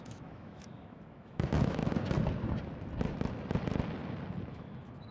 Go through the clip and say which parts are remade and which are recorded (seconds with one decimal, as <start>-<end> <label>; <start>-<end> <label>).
0.0-1.8 remade; 1.8-4.5 recorded; 4.5-5.1 remade

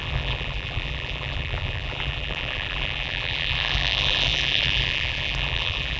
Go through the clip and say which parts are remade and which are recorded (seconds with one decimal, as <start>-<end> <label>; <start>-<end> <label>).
0.0-6.0 remade

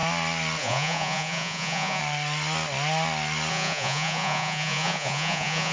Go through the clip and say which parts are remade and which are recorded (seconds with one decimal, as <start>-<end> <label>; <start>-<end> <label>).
0.0-0.6 recorded; 0.6-2.0 remade; 2.0-3.5 recorded; 3.5-5.7 remade

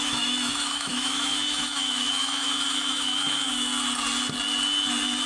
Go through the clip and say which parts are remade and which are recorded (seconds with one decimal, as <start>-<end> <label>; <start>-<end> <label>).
0.0-3.7 remade; 3.7-5.3 recorded

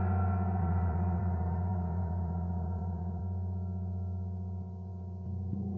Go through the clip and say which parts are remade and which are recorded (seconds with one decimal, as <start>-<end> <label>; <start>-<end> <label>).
0.0-0.6 recorded; 0.6-3.2 remade; 3.2-5.8 recorded

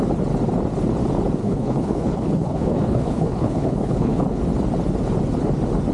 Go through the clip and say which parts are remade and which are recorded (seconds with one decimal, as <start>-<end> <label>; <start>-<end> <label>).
0.0-1.4 recorded; 1.4-4.4 remade; 4.4-5.9 recorded